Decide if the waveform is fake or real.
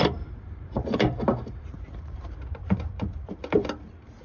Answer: fake